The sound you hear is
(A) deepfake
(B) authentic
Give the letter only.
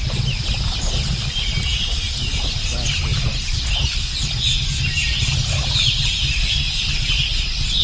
B